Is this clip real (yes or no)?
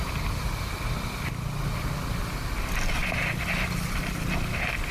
yes